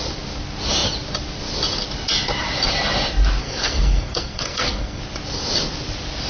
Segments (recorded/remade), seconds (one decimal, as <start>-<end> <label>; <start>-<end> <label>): 0.0-3.4 recorded; 3.4-5.0 remade; 5.0-6.3 recorded